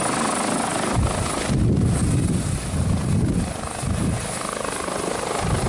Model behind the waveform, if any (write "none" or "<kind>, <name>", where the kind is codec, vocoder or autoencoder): none